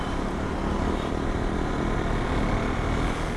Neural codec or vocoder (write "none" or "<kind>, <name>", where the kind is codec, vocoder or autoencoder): none